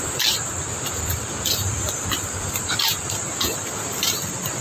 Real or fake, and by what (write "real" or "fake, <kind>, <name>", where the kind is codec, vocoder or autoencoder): real